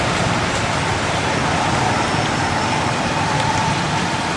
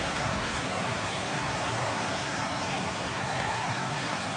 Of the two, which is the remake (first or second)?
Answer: second